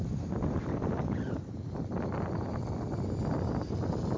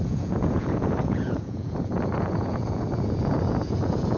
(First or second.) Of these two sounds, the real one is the first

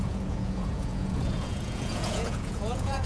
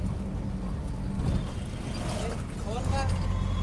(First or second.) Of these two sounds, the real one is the second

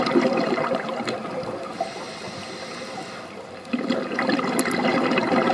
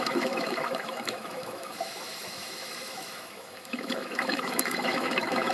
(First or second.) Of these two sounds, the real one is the first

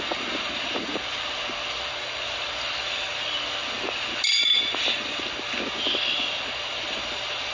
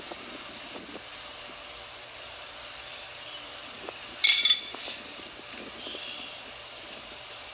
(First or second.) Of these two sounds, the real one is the first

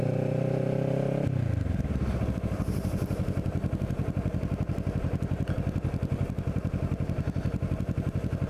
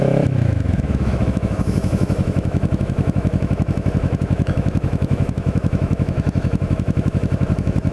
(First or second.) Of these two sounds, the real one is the first